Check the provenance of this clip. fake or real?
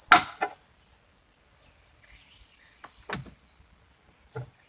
real